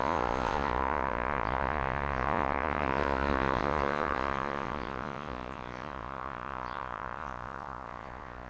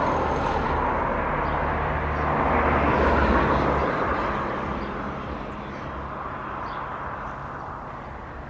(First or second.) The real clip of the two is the second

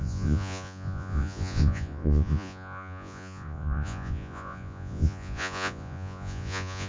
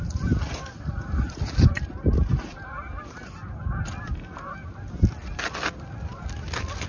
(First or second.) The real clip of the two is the second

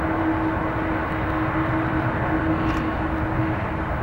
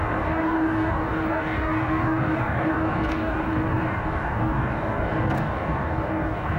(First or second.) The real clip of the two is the first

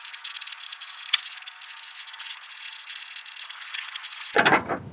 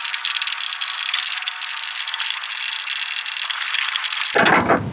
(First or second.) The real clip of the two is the second